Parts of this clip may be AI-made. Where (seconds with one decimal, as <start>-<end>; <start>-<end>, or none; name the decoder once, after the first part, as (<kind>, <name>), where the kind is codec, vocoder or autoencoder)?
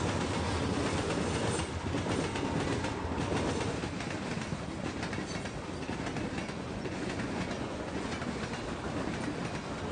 6.4-8.2 (vocoder, Vocos)